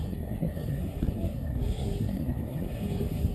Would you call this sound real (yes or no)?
no